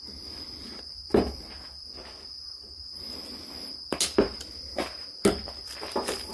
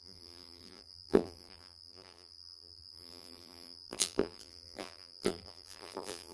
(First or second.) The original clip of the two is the first